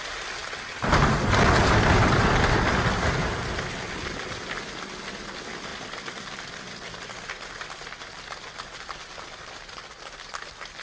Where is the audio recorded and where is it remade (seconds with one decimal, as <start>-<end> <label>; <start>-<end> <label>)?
0.0-0.4 recorded; 0.4-1.1 remade; 1.1-5.7 recorded; 5.7-7.0 remade; 7.0-10.8 recorded